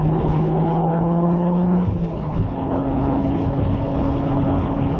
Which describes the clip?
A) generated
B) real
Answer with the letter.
A